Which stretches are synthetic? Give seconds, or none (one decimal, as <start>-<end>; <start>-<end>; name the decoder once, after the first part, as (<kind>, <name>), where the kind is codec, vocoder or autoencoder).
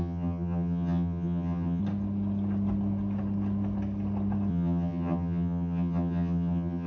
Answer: 0.0-1.8 (vocoder, HiFi-GAN); 4.5-6.9